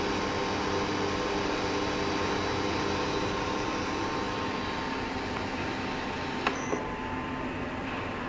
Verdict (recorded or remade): recorded